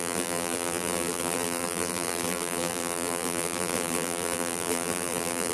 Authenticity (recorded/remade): remade